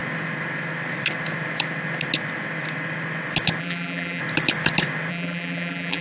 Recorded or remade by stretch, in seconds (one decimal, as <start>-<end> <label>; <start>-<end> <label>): 0.0-3.6 recorded; 3.6-4.2 remade; 4.2-5.1 recorded; 5.1-6.0 remade